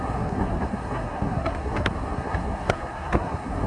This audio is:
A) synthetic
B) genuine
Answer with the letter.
A